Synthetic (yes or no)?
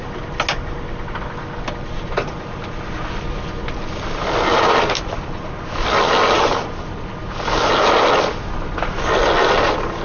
no